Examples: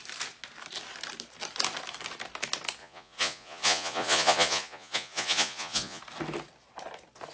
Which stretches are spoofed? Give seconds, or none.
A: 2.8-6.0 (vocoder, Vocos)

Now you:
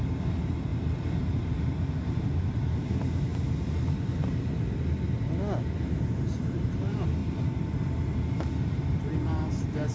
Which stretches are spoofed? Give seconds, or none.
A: 0.0-0.7 (vocoder, BigVGAN v2); 1.2-3.3; 6.0-7.2; 8.4-9.9

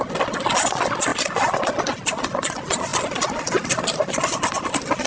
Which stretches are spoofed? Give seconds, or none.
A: none

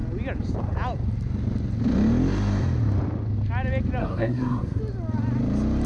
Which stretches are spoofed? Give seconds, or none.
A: 4.0-4.8 (codec, SNAC)

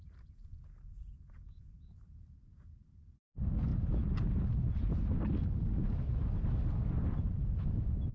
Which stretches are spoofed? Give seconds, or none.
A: none

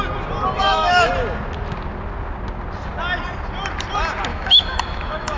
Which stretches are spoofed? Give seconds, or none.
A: 0.6-1.1 (autoencoder, DAC-VAE); 4.3-5.4